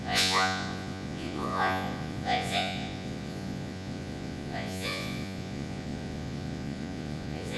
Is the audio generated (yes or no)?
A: yes